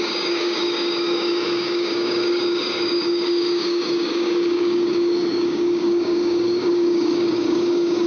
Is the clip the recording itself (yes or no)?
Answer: no